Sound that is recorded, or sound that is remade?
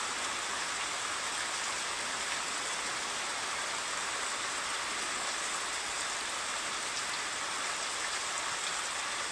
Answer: recorded